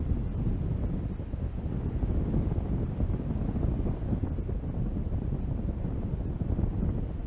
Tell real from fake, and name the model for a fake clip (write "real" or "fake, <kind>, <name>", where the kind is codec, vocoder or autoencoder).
real